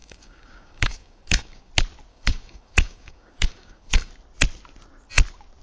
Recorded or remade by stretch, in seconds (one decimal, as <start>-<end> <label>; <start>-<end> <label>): 0.0-1.7 remade; 1.7-2.1 recorded; 2.1-4.1 remade; 4.1-5.6 recorded